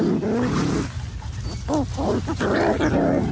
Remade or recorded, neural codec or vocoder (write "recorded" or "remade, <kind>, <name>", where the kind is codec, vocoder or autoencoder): recorded